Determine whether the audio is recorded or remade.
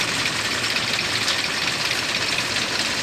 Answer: recorded